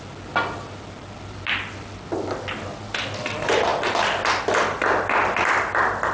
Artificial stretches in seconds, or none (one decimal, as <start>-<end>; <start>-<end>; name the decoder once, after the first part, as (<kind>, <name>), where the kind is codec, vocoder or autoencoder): none

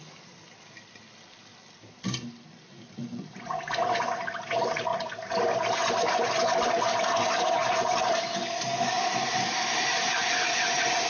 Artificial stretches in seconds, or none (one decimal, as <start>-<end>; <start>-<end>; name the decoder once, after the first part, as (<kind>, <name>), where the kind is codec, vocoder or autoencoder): none

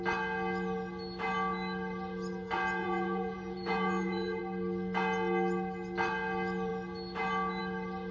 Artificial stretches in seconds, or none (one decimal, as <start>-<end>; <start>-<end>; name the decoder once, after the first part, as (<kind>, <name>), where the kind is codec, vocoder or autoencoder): 2.8-4.4 (vocoder, Vocos)

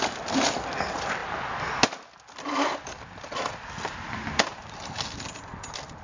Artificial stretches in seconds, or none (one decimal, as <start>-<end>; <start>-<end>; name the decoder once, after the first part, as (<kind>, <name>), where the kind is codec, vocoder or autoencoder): none

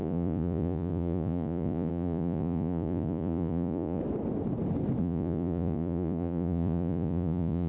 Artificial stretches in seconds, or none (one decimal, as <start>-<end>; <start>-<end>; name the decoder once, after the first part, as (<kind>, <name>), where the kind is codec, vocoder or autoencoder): 0.0-4.0 (vocoder, Vocos); 5.0-7.7

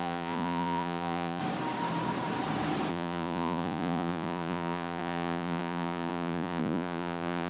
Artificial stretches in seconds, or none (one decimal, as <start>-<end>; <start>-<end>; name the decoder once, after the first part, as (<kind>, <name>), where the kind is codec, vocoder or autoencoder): 0.0-1.4 (vocoder, Vocos); 2.9-7.5

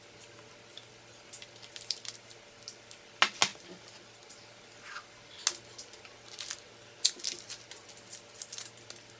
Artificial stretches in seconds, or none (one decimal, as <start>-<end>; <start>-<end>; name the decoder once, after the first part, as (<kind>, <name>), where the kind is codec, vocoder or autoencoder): none